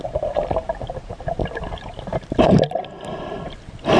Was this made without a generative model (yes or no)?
yes